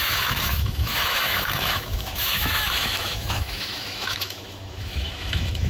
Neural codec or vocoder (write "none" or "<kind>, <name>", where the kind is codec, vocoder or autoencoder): autoencoder, DAC-VAE